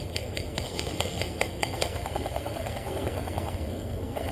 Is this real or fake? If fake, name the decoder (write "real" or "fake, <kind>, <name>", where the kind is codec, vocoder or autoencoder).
fake, codec, SNAC